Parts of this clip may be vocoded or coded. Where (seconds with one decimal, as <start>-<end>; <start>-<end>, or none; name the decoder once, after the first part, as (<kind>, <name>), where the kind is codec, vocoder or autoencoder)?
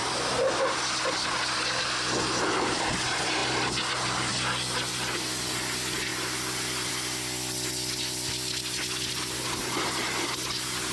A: none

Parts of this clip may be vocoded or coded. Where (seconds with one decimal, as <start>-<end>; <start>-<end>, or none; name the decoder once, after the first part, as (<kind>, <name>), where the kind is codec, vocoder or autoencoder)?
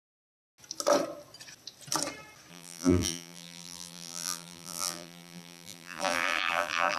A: 2.5-7.0 (vocoder, BigVGAN v2)